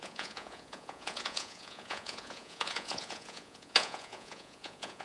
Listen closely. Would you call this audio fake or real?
fake